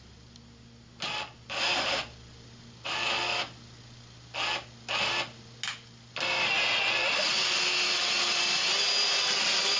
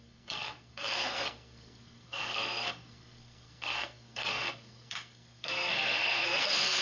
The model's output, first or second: second